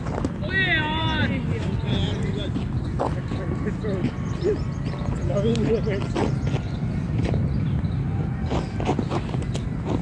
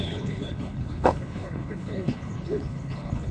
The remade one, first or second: second